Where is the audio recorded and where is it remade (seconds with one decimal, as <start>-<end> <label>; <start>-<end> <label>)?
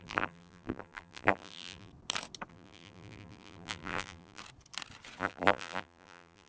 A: 0.0-1.9 remade; 1.9-2.5 recorded; 2.5-4.4 remade; 4.4-5.2 recorded; 5.2-6.5 remade